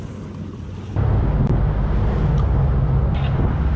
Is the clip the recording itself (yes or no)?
yes